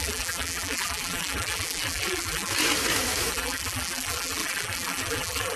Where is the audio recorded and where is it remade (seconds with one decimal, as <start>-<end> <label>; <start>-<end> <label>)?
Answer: 0.0-2.5 remade; 2.5-3.3 recorded; 3.3-5.6 remade